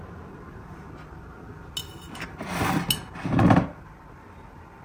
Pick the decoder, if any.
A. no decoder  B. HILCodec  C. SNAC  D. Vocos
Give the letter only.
A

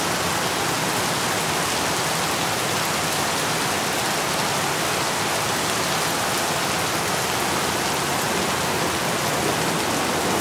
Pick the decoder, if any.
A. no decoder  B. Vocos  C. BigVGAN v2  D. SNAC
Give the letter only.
A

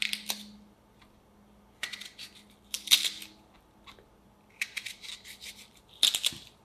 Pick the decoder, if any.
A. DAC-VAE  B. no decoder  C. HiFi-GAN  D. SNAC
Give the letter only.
B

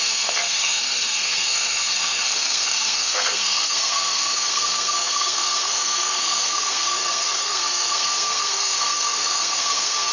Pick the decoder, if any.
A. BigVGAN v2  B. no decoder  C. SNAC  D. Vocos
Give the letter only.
C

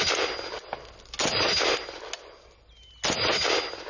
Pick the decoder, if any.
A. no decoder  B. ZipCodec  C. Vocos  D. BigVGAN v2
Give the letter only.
A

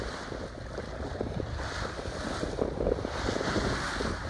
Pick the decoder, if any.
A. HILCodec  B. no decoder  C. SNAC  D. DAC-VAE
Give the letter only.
B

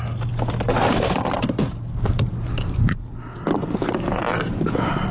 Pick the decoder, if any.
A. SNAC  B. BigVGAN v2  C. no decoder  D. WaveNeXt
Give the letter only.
C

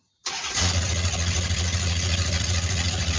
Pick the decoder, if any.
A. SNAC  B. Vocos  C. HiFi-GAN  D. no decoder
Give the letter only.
B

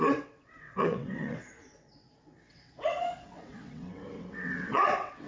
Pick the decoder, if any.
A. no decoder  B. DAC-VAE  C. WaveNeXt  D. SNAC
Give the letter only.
C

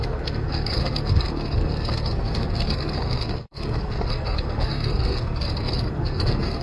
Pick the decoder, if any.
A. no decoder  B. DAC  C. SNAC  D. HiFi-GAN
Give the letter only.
C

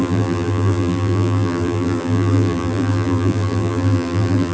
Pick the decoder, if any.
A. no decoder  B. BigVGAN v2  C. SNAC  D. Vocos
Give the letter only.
B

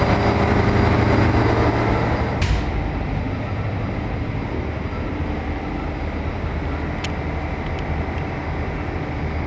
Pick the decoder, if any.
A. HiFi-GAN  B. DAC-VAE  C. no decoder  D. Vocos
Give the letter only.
C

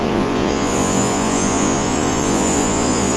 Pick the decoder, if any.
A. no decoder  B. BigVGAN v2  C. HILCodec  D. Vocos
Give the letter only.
D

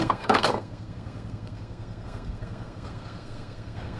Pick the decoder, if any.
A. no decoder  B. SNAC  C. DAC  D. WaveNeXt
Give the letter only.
B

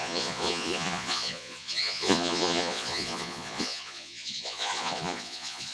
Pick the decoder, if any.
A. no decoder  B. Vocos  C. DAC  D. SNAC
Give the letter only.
B